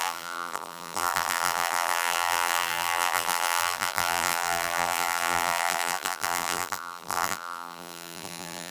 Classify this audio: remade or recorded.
remade